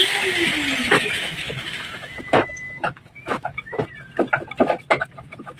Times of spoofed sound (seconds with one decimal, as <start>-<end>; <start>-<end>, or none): 0.8-3.8

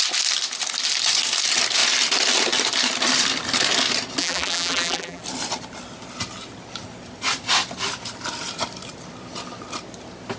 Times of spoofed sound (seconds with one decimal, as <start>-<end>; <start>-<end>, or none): 4.2-5.2